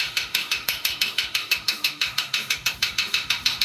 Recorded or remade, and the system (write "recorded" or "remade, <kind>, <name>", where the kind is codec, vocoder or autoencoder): remade, autoencoder, DAC-VAE